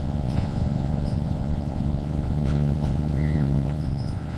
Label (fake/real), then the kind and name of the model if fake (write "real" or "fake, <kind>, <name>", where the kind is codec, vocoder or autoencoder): fake, vocoder, Vocos